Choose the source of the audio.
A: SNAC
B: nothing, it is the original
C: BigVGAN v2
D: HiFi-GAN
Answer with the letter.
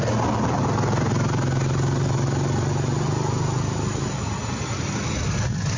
B